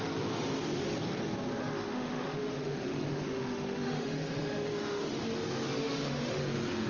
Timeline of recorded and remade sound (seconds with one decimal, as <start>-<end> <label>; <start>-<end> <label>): 0.0-1.6 recorded; 1.6-5.2 remade; 5.2-5.8 recorded; 5.8-6.4 remade; 6.4-6.9 recorded